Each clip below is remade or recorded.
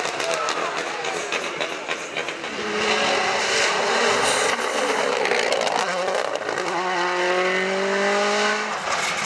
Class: recorded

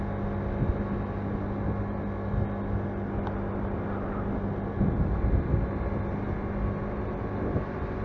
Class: recorded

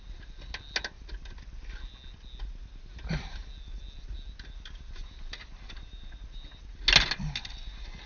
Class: recorded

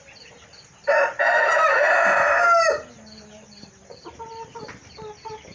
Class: recorded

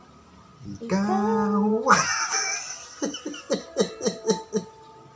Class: recorded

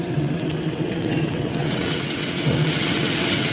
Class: remade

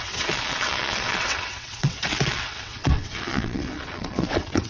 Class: remade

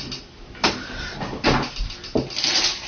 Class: recorded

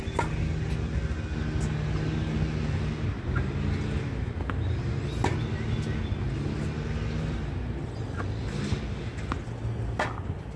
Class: recorded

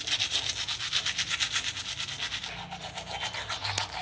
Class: recorded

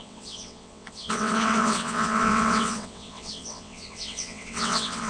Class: remade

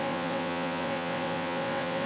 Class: remade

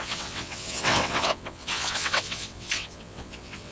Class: remade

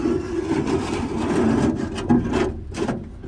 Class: recorded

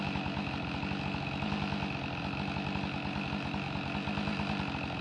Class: recorded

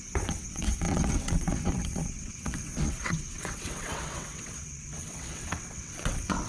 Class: remade